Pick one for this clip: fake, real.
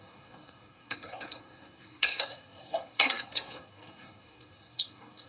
fake